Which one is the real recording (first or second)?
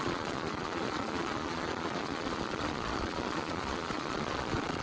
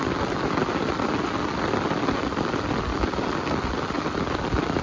second